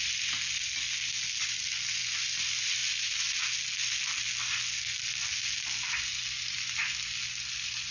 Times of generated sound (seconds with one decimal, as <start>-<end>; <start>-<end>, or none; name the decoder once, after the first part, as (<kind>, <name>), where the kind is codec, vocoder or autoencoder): none